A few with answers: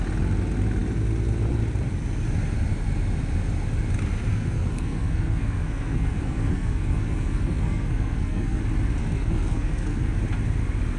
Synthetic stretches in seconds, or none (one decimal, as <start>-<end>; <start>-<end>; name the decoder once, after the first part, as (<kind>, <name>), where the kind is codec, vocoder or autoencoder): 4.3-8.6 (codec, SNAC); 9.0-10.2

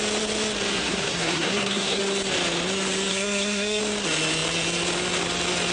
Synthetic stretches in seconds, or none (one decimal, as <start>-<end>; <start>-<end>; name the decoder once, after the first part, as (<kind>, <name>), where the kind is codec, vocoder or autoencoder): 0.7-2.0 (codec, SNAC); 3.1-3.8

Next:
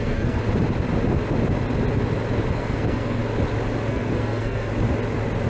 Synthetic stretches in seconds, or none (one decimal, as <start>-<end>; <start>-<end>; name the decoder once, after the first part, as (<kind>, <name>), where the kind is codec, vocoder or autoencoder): 0.0-0.4 (codec, SNAC); 2.5-3.2; 3.9-4.7

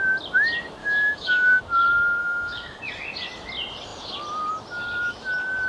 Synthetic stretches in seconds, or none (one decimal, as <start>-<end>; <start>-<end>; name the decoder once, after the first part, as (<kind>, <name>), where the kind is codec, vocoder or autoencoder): 0.8-1.6 (autoencoder, DAC-VAE); 2.2-2.8

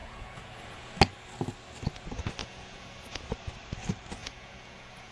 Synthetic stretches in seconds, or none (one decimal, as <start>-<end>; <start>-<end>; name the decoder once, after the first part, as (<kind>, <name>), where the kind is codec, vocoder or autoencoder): 0.0-1.0 (vocoder, Vocos); 2.4-3.2; 4.2-5.1

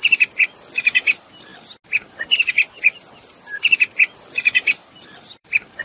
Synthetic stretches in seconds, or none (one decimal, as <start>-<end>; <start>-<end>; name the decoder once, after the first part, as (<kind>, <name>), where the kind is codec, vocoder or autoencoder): 4.8-5.8 (vocoder, BigVGAN v2)

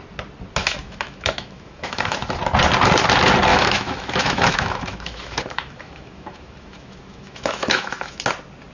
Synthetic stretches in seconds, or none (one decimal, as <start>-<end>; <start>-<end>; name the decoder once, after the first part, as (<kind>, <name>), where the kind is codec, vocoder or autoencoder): 0.6-2.3 (autoencoder, DAC-VAE); 3.5-8.2